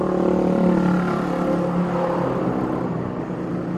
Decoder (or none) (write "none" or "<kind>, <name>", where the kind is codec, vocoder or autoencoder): none